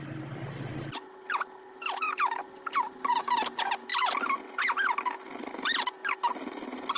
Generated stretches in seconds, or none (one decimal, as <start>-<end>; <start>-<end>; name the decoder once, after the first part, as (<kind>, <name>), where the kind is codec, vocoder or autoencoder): none